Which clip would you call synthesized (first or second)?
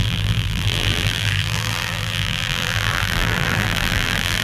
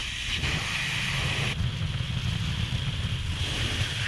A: first